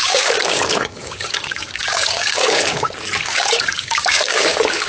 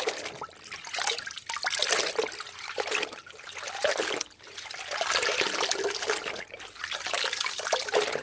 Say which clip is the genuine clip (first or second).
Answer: second